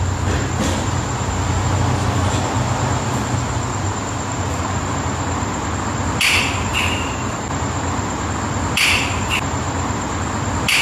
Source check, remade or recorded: recorded